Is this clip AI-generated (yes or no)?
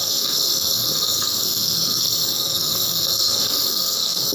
yes